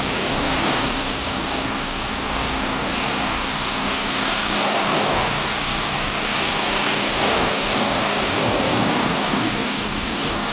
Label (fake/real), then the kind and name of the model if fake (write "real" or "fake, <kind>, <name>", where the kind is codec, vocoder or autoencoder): fake, codec, DAC